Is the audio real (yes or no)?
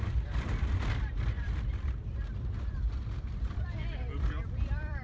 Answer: no